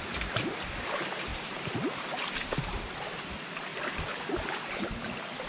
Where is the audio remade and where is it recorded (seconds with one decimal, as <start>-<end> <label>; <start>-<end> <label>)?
0.0-1.3 recorded; 1.3-3.3 remade; 3.3-5.5 recorded